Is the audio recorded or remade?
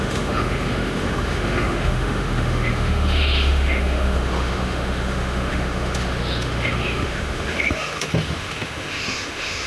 remade